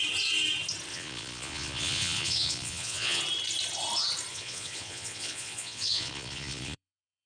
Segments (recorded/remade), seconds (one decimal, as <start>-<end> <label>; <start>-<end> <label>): 0.0-0.9 recorded; 0.9-3.2 remade; 3.2-4.3 recorded; 4.3-7.3 remade